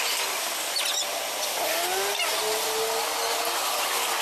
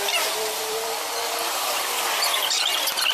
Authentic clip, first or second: first